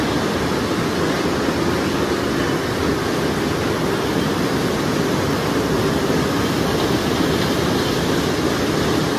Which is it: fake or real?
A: real